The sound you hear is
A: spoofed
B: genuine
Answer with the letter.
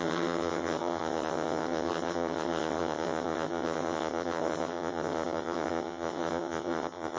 A